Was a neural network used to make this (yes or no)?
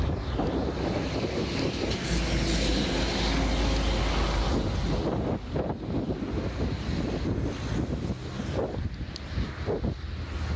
no